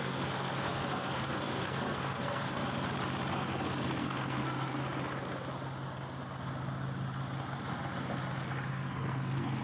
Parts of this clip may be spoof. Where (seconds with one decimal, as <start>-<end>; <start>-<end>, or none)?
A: 0.0-2.6; 3.3-4.8; 8.7-9.6